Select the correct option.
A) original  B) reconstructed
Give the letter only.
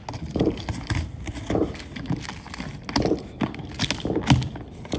A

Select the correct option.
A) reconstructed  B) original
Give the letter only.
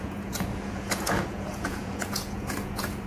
A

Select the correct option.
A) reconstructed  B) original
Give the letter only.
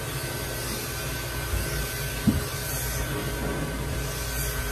B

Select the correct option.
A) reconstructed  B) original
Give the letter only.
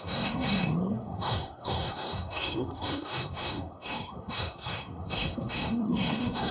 A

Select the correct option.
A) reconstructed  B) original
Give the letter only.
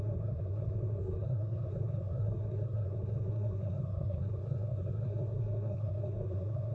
A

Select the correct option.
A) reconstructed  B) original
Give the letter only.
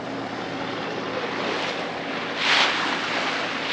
B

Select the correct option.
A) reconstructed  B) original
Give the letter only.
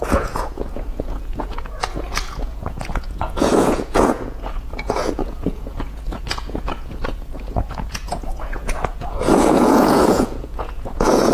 A